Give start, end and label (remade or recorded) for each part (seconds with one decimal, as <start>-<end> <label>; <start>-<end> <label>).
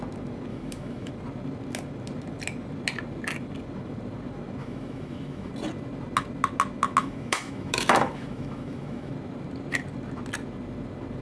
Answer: 0.0-0.5 recorded; 0.5-1.1 remade; 1.1-4.6 recorded; 4.6-5.5 remade; 5.5-7.0 recorded; 7.0-9.1 remade; 9.1-11.2 recorded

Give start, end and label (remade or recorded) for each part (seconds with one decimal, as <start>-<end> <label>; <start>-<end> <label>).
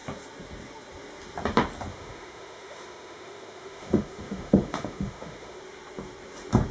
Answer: 0.0-1.9 recorded; 1.9-5.6 remade; 5.6-6.7 recorded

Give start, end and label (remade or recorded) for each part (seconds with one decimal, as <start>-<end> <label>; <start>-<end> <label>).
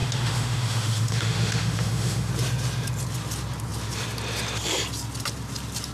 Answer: 0.0-2.3 remade; 2.3-5.9 recorded